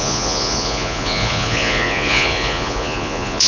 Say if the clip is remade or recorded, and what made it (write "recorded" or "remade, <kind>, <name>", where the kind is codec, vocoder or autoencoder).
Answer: remade, vocoder, Vocos